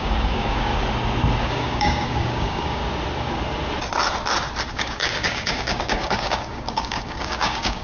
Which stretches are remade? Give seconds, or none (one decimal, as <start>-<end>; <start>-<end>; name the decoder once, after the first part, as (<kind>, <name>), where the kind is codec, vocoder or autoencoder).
0.0-0.7 (codec, DAC); 1.4-2.8; 4.7-7.8